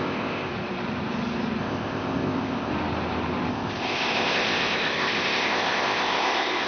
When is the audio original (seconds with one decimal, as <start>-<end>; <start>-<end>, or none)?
0.5-1.6; 2.7-3.5